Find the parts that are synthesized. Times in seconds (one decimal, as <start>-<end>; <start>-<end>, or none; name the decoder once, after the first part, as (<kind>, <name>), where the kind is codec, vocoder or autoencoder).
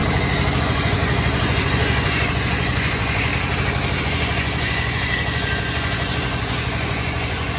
0.6-3.3 (vocoder, Vocos); 4.0-7.6